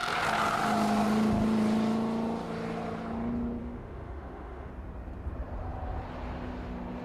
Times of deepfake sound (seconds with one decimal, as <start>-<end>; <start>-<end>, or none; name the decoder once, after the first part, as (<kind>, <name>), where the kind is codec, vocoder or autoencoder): 3.6-4.7 (autoencoder, DAC-VAE)